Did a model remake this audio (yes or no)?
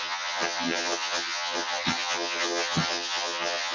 yes